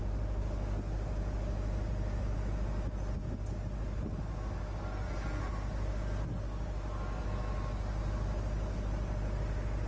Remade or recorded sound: recorded